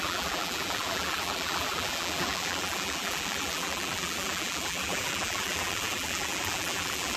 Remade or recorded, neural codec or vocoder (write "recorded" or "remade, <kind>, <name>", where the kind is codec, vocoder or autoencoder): remade, vocoder, BigVGAN v2